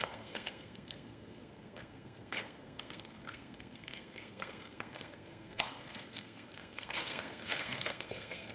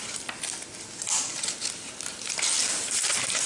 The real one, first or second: second